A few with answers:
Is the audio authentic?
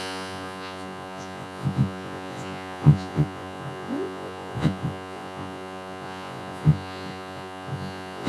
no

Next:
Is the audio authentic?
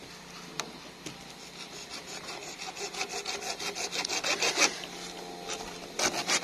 yes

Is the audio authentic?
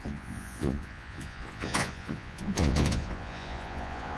no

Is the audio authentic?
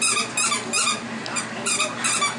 yes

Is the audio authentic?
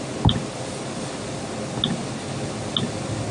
yes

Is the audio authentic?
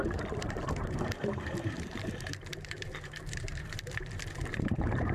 no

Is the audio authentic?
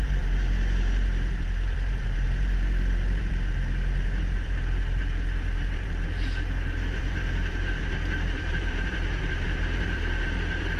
no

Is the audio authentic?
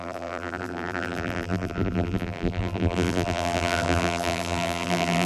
no